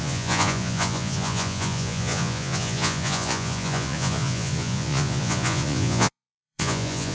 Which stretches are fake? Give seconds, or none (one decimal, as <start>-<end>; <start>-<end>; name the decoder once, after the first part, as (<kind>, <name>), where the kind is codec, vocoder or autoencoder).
0.0-7.1 (vocoder, Vocos)